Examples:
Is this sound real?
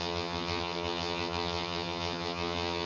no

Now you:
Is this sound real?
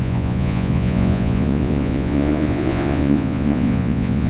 no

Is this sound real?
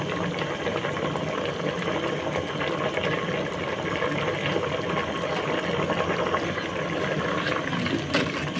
yes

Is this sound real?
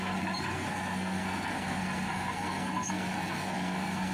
no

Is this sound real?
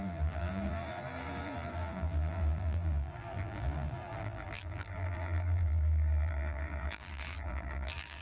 no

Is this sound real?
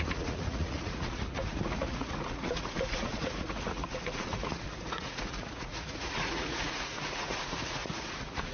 no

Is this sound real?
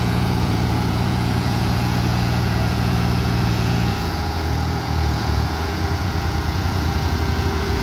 no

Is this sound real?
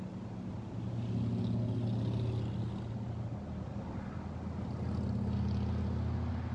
yes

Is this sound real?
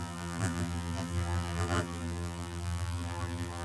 no